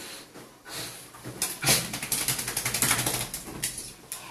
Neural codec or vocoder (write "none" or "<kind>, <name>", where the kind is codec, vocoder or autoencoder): none